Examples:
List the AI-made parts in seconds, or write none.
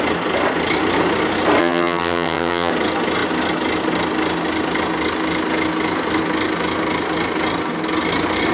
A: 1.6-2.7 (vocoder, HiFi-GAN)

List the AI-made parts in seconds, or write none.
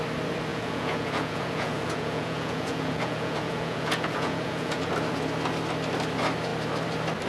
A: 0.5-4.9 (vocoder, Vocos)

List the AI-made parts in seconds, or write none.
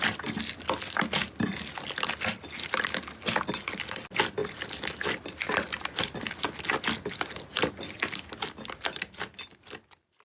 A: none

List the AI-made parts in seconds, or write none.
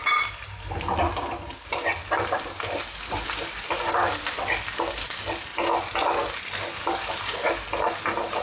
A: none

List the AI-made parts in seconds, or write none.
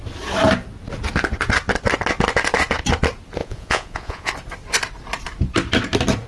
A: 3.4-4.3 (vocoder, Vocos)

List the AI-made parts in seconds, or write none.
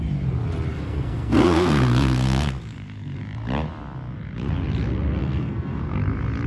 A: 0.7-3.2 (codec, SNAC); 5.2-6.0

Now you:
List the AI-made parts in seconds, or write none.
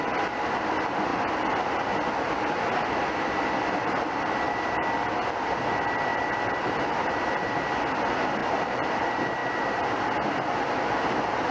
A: 6.1-6.9 (vocoder, BigVGAN v2); 8.4-9.0